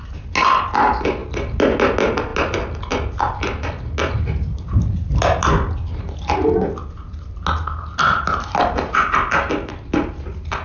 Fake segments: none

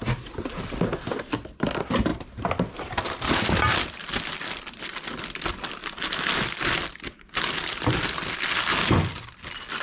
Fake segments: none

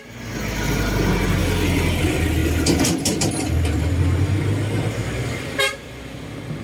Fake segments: 5.0-5.9 (vocoder, BigVGAN v2)

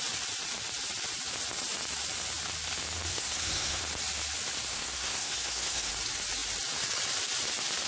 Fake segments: 3.1-3.8 (codec, SNAC); 4.7-5.9

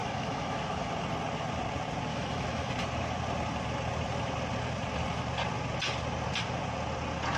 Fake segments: 0.0-0.9 (autoencoder, DAC-VAE); 2.1-2.7